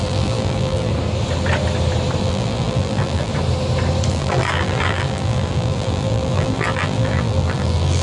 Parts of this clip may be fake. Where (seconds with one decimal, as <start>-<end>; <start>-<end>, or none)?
0.0-0.9; 2.2-3.3; 4.1-8.0